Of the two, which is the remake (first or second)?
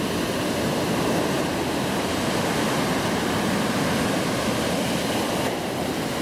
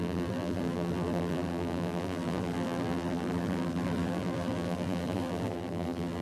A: second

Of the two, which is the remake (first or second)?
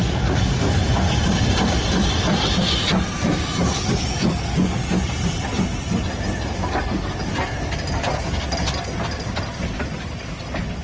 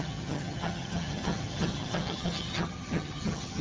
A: second